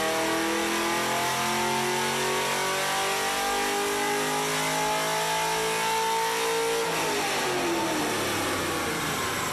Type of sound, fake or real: real